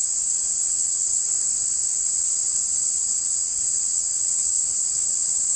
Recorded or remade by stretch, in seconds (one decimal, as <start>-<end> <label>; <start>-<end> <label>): 0.0-1.3 remade; 1.3-1.9 recorded; 1.9-5.6 remade